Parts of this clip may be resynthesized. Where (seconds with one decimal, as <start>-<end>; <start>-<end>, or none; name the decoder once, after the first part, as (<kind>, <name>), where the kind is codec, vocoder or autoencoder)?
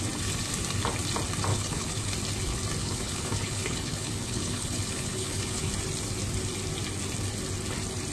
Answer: 1.5-2.1 (codec, HILCodec); 2.8-5.7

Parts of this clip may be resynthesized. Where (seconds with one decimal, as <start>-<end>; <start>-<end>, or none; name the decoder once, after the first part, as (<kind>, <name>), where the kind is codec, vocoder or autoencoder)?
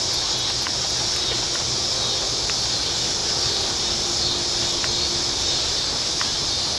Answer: none